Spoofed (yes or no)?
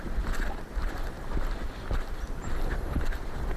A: no